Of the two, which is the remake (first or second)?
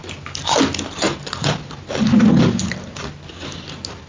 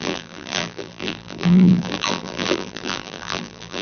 second